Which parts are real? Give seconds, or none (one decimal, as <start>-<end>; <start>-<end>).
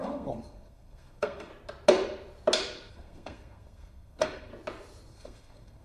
1.5-2.9; 4.5-5.1